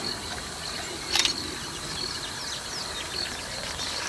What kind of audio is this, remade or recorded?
recorded